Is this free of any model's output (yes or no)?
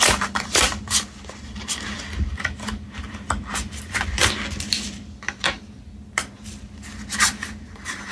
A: yes